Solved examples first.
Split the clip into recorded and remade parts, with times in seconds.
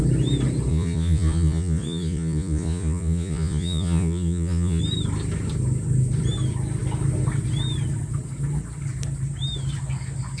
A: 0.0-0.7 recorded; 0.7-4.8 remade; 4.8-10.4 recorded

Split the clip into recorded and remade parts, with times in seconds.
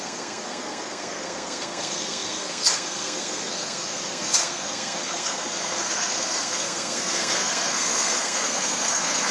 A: 0.0-9.3 remade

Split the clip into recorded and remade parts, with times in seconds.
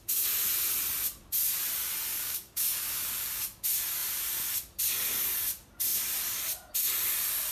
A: 0.0-2.1 recorded; 2.1-3.4 remade; 3.4-7.5 recorded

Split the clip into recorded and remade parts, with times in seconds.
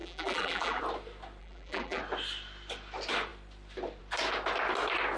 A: 0.0-0.8 remade; 0.8-1.4 recorded; 1.4-2.0 remade; 2.0-5.2 recorded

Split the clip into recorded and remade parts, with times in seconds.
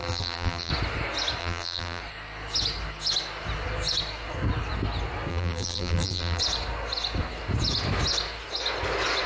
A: 0.0-0.7 remade; 0.7-1.4 recorded; 1.4-2.0 remade; 2.0-5.3 recorded; 5.3-6.4 remade; 6.4-9.3 recorded